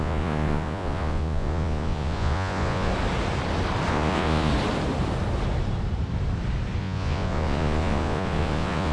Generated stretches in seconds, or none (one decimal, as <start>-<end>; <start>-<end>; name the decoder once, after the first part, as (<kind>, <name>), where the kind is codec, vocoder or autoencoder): 0.0-2.9 (vocoder, Vocos); 3.9-4.5; 6.8-8.9